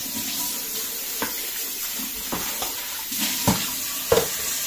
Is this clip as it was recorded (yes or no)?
yes